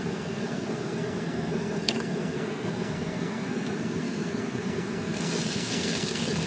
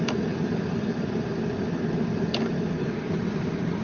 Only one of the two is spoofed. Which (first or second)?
first